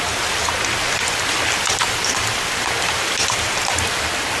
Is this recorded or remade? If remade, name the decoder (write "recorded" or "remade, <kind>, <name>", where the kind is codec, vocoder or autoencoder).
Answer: recorded